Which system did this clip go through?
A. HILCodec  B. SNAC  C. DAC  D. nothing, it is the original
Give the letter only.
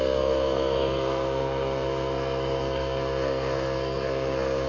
B